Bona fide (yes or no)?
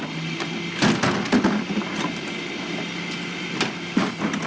yes